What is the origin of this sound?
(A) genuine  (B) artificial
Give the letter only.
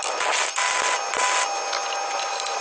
A